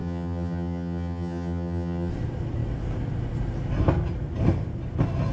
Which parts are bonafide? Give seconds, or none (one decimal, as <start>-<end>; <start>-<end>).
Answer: 2.1-5.3